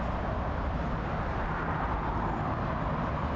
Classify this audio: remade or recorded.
recorded